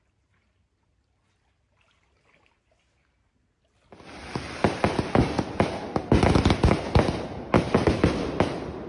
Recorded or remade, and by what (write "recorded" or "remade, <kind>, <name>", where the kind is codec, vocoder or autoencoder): recorded